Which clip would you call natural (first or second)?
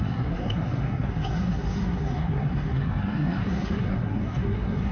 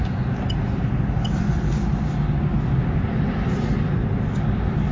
second